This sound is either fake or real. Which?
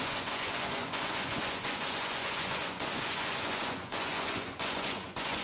fake